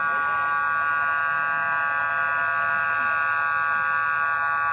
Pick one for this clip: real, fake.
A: real